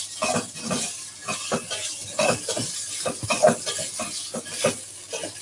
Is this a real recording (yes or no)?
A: yes